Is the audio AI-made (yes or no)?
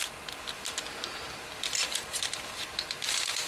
no